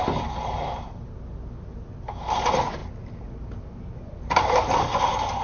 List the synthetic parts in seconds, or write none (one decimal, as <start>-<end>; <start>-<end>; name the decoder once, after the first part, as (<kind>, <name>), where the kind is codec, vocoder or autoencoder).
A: none